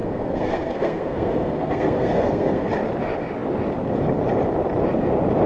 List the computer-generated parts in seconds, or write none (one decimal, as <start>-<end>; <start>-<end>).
0.0-2.7

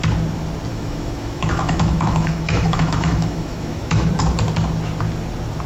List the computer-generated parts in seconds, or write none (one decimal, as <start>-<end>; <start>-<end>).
0.7-4.1

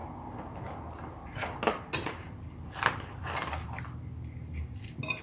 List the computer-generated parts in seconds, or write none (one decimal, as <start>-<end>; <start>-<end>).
none

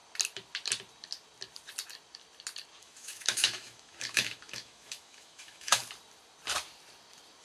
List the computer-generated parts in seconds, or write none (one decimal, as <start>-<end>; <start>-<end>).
2.8-5.8

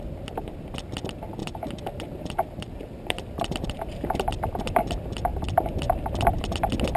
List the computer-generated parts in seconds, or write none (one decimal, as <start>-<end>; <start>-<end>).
1.4-4.3